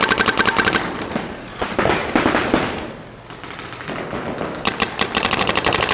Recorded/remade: recorded